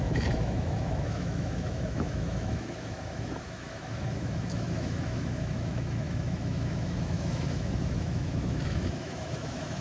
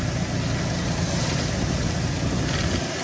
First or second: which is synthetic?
first